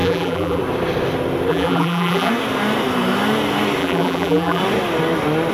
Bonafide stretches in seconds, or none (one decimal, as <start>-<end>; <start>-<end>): 0.6-1.5; 2.3-3.8; 4.6-5.5